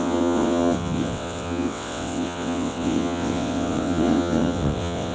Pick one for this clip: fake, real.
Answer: fake